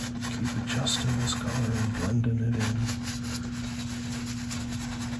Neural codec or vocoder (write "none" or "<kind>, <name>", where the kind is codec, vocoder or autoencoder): none